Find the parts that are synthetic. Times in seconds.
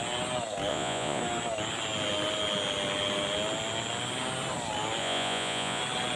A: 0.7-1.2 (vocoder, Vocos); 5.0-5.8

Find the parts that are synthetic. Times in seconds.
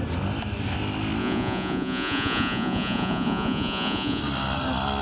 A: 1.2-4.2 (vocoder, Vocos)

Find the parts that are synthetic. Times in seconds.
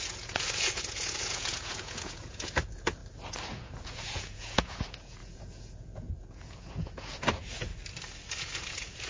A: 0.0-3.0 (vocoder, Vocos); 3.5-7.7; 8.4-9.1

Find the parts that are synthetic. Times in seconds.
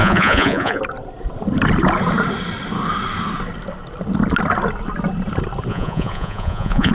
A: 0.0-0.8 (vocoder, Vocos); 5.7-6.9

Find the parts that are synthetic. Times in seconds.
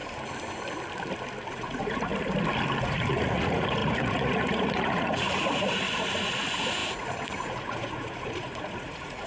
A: 1.5-2.1 (vocoder, Vocos); 2.8-9.3